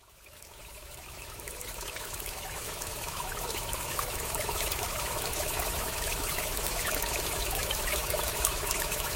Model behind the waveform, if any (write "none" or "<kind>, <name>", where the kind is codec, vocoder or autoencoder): autoencoder, DAC-VAE